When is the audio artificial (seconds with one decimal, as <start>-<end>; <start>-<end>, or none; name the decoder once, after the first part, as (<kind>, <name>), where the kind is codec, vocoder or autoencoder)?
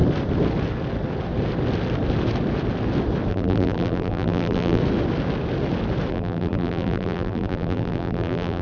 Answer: 3.3-4.8 (vocoder, BigVGAN v2); 6.1-8.6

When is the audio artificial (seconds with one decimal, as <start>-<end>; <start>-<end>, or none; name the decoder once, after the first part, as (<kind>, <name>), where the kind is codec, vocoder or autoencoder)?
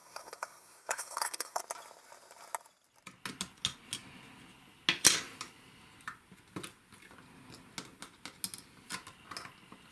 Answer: 0.0-1.6 (codec, SNAC)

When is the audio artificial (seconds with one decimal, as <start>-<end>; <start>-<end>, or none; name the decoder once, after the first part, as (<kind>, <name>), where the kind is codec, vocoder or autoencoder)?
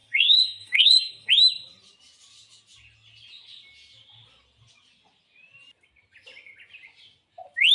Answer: 0.0-1.3 (codec, SNAC)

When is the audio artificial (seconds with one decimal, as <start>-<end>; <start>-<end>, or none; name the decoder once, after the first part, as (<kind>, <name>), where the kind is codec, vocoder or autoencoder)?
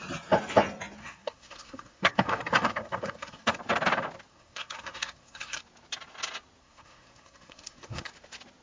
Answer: 1.0-3.6 (codec, SNAC); 4.3-5.6; 6.6-8.1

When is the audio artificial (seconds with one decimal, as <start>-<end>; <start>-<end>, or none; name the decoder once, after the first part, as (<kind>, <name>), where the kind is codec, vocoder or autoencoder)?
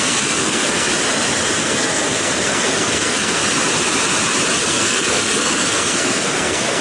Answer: 0.0-0.9 (codec, SNAC); 1.6-3.4; 4.6-6.8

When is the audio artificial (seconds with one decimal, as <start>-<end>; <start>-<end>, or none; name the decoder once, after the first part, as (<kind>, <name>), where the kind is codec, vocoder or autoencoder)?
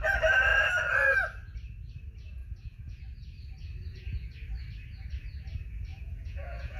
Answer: 2.4-3.0 (vocoder, Vocos); 5.9-6.8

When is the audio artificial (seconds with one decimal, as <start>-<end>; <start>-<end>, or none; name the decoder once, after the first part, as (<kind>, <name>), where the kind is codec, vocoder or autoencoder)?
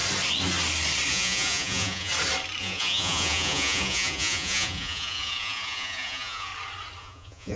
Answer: 1.1-2.1 (vocoder, Vocos); 2.6-6.5; 7.0-7.6